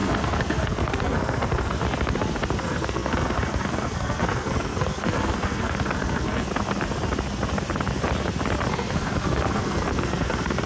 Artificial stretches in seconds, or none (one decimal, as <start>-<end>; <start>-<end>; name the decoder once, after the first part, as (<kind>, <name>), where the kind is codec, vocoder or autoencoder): 0.0-1.8 (codec, SNAC); 2.6-6.5; 8.7-10.7